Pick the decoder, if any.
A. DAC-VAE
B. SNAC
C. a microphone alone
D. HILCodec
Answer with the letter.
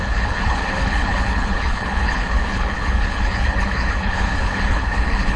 D